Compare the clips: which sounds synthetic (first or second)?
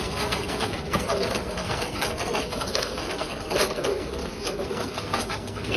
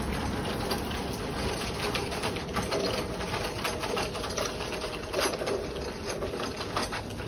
first